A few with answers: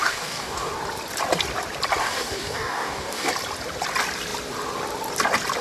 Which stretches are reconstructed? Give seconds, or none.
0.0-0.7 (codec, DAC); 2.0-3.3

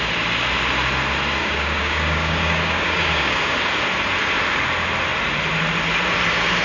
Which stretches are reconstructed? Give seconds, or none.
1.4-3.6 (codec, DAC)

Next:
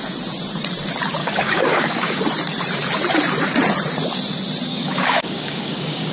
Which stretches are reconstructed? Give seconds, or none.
1.2-2.2 (codec, DAC); 4.7-6.1